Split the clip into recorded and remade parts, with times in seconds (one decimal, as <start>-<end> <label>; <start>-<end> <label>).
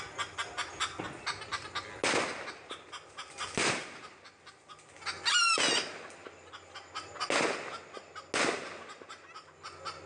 0.0-10.1 recorded